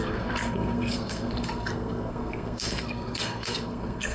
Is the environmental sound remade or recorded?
remade